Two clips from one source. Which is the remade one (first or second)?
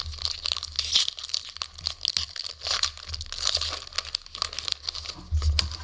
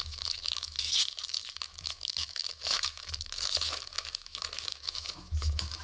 second